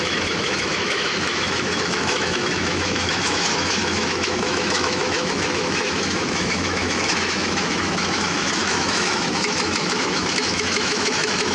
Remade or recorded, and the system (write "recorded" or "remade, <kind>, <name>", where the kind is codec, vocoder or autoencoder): remade, autoencoder, DAC-VAE